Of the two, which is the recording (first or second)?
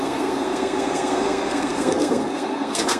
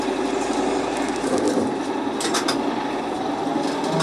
second